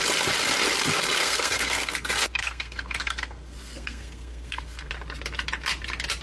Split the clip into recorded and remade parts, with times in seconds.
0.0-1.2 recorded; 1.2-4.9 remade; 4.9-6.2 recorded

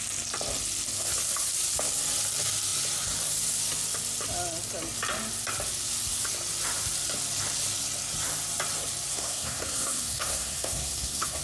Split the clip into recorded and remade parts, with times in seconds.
0.0-9.1 recorded; 9.1-11.4 remade

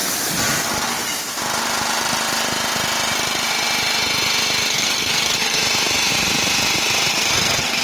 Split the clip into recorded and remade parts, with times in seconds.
0.0-4.7 recorded; 4.7-5.6 remade; 5.6-7.1 recorded; 7.1-7.8 remade

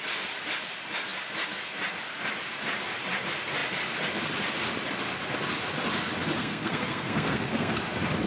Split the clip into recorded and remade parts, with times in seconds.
0.0-6.4 recorded; 6.4-7.8 remade; 7.8-8.3 recorded

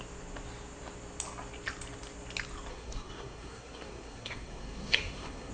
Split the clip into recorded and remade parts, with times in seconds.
0.0-2.7 recorded; 2.7-5.5 remade

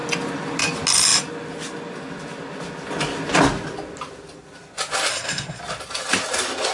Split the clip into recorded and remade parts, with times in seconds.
0.0-5.1 recorded; 5.1-5.6 remade; 5.6-6.7 recorded

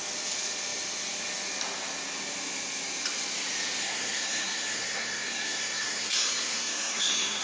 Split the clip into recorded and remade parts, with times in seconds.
0.0-3.8 recorded; 3.8-7.4 remade